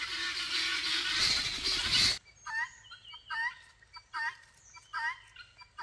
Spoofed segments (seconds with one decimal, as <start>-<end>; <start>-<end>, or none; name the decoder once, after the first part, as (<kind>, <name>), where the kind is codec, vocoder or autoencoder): none